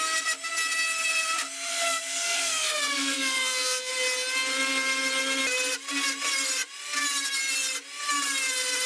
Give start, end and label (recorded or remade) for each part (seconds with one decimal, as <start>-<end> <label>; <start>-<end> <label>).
0.0-1.7 recorded; 1.7-3.9 remade; 3.9-8.9 recorded